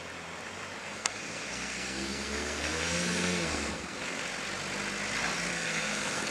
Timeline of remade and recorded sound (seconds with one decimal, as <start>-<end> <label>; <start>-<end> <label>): 0.0-0.8 recorded; 0.8-4.2 remade; 4.2-5.5 recorded; 5.5-6.3 remade